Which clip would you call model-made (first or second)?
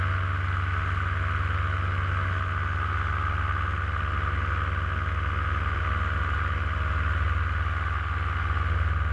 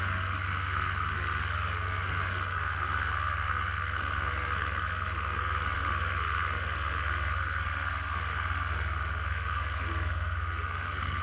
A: second